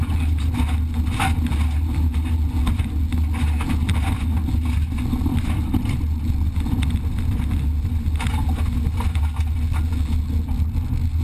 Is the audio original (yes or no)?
yes